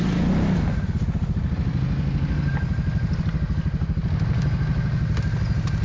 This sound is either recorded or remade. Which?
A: recorded